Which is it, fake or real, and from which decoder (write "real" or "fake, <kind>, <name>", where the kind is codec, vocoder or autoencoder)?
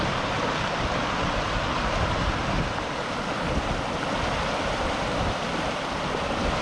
real